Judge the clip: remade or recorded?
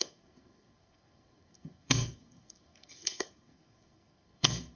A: remade